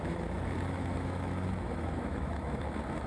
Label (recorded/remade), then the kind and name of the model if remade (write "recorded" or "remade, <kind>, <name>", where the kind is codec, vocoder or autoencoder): remade, autoencoder, DAC-VAE